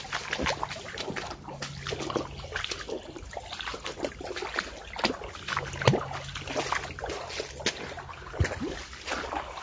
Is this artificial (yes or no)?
no